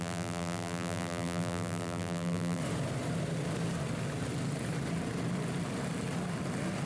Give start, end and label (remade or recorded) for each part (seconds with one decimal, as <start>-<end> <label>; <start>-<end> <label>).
0.0-2.6 remade; 2.6-6.9 recorded